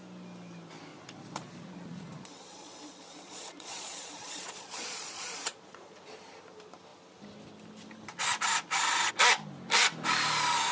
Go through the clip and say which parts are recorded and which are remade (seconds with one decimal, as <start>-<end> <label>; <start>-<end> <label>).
0.0-0.9 recorded; 0.9-6.0 remade; 6.0-10.7 recorded